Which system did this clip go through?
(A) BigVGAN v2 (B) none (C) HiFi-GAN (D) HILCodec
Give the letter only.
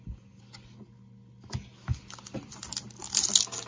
B